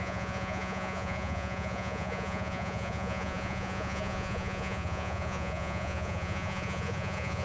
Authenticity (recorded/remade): remade